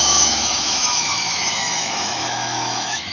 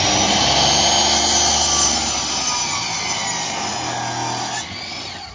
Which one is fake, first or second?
first